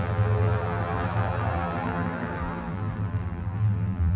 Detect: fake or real fake